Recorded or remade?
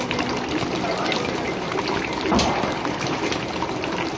recorded